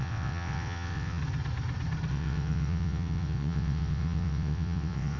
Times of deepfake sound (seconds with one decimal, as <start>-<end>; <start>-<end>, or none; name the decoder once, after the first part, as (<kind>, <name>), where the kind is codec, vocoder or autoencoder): 0.0-1.2 (vocoder, WaveNeXt); 2.1-5.2